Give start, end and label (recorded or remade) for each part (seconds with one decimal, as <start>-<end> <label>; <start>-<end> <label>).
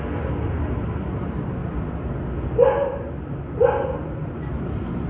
0.0-5.1 recorded